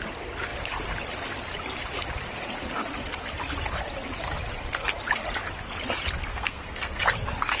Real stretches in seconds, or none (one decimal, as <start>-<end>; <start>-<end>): 0.0-6.3; 7.0-7.6